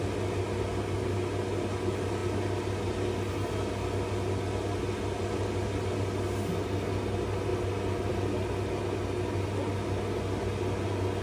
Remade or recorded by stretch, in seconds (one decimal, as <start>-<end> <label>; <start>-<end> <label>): 0.0-11.2 recorded